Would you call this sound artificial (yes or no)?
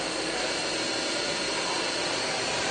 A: no